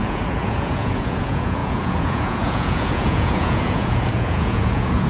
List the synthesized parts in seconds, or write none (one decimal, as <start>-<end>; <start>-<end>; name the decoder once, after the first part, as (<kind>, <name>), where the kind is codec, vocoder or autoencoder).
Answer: 0.0-5.1 (vocoder, Vocos)